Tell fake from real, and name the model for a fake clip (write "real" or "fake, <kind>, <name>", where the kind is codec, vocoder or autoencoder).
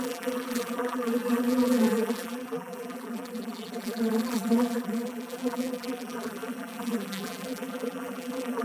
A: fake, vocoder, BigVGAN v2